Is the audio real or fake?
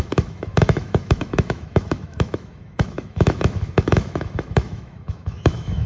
fake